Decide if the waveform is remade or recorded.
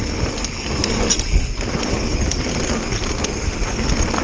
recorded